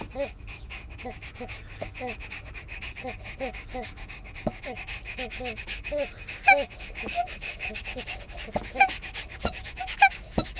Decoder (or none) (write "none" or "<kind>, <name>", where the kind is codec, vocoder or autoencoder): autoencoder, DAC-VAE